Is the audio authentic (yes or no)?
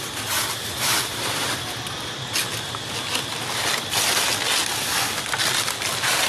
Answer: yes